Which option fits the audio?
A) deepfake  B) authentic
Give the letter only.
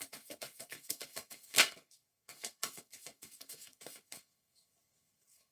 A